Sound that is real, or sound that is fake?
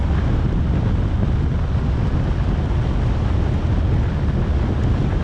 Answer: real